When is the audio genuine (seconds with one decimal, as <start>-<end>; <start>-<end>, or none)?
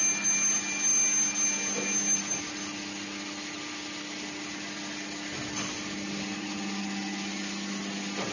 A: 0.0-8.3